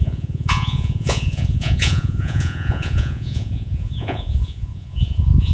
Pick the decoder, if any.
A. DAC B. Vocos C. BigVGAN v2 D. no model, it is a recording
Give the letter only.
B